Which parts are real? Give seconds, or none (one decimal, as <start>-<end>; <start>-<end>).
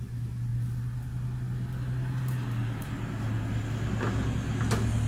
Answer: 0.0-5.1